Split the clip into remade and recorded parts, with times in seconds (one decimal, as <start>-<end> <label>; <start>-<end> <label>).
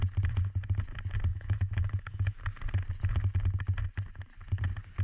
0.0-1.3 recorded; 1.3-2.4 remade; 2.4-5.0 recorded